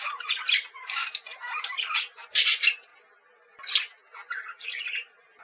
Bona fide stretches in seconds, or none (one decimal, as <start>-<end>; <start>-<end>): 2.9-4.5